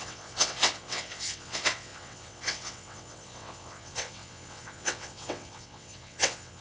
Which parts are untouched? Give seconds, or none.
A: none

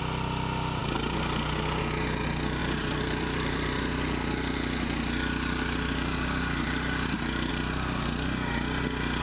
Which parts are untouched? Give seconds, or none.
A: 0.0-2.6; 7.5-9.2